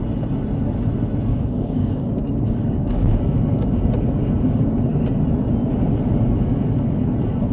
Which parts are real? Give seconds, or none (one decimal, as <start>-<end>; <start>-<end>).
0.0-1.3; 3.2-7.5